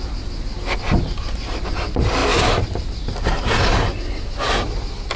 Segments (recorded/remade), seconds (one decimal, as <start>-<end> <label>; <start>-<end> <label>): 0.0-5.2 recorded